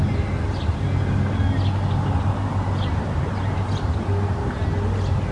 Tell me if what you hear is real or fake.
real